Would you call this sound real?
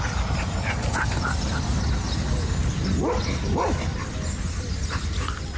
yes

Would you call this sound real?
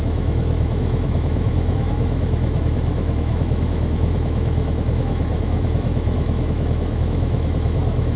no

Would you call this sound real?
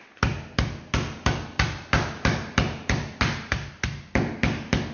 yes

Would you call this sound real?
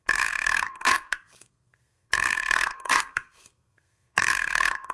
no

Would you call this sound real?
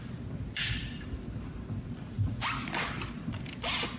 yes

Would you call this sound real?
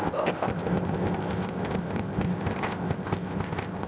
no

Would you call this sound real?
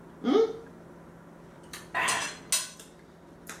yes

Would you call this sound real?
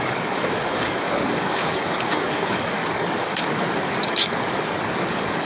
no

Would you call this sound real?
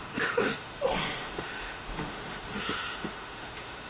no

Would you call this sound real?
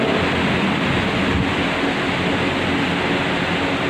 yes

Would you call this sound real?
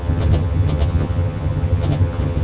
no